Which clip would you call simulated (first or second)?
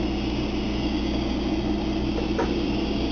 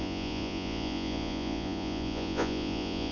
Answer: second